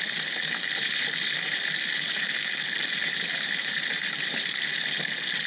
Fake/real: real